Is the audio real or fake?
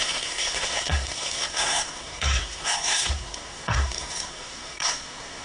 fake